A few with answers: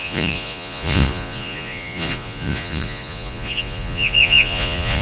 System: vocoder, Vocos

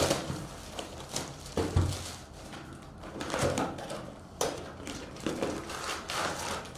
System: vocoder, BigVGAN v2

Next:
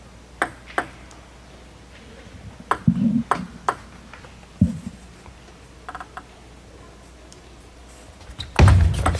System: none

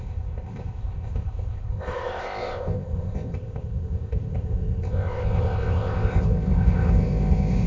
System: codec, ZipCodec